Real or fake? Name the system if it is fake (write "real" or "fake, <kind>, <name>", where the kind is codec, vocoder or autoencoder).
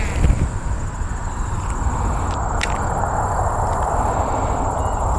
real